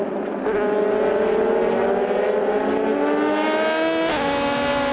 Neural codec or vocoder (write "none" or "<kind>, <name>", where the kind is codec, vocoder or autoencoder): none